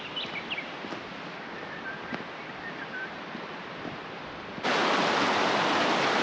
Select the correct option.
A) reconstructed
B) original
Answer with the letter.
B